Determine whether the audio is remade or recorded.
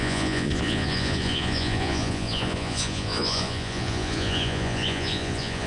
remade